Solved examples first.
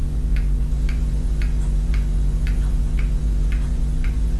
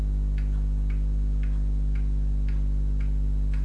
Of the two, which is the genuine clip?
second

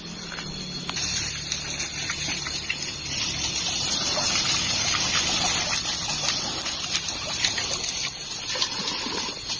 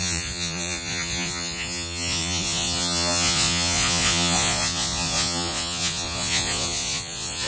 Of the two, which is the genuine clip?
first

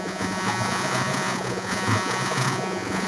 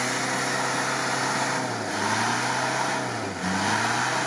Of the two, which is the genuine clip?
second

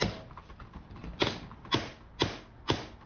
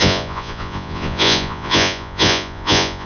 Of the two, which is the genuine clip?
first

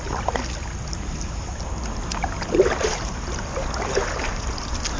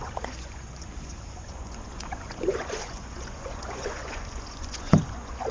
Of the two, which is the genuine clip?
first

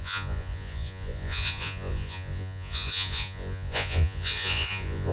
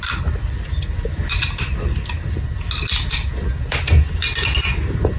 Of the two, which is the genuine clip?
second